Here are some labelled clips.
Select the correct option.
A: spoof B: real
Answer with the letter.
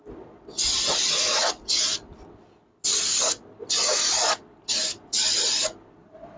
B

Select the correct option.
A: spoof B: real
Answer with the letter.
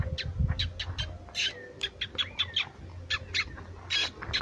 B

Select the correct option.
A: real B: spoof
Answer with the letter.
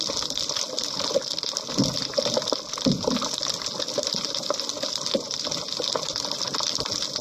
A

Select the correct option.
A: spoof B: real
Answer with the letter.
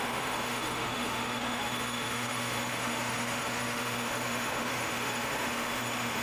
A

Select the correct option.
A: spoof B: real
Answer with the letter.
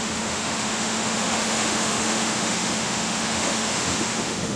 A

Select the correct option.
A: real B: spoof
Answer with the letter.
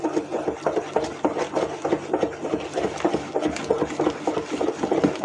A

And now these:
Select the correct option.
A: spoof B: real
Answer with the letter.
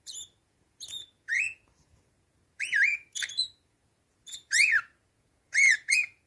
A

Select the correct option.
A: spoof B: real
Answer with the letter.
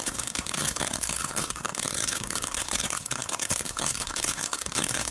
A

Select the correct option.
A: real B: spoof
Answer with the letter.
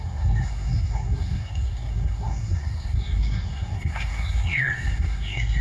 B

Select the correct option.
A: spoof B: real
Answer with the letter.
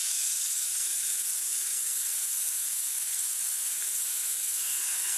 A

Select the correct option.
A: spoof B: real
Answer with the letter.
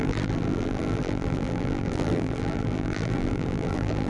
A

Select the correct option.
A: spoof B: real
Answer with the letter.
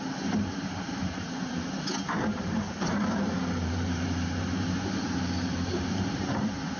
A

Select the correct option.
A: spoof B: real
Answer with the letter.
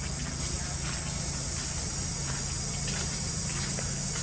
B